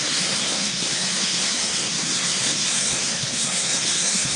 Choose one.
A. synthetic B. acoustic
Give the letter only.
A